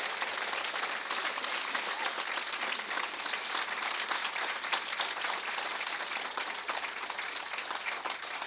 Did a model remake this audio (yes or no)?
no